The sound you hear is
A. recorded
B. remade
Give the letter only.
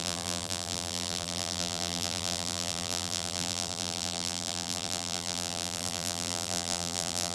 B